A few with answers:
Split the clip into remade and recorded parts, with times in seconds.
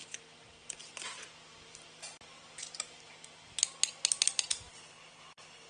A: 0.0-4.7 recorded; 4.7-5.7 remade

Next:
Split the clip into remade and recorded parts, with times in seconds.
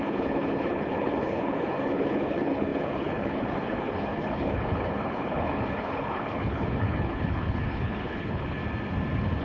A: 0.0-8.6 remade; 8.6-9.4 recorded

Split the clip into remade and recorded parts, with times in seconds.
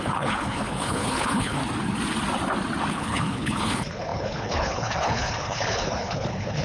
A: 0.0-1.6 remade; 1.6-2.9 recorded; 2.9-6.6 remade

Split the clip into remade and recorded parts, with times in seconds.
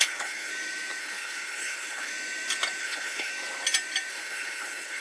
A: 0.0-0.5 remade; 0.5-1.0 recorded; 1.0-2.1 remade; 2.1-2.8 recorded; 2.8-3.3 remade; 3.3-4.1 recorded; 4.1-5.0 remade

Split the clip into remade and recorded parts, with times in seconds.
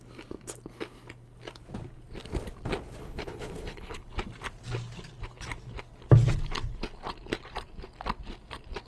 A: 0.0-3.0 recorded; 3.0-4.0 remade; 4.0-8.9 recorded